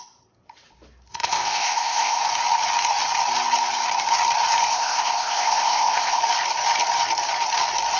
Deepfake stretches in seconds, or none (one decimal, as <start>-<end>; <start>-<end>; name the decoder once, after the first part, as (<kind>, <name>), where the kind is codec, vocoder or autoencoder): 1.1-2.2 (codec, ZipCodec); 4.7-6.2